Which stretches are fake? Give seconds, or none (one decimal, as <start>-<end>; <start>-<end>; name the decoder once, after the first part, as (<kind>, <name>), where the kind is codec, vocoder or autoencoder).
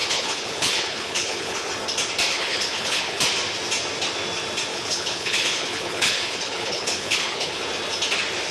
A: 0.0-1.7 (codec, HILCodec); 2.3-3.2; 4.7-7.6